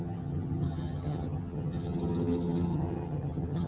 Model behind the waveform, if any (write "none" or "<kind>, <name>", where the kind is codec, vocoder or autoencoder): vocoder, HiFi-GAN